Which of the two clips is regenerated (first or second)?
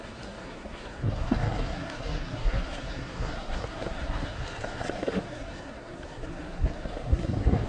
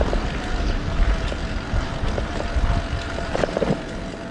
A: first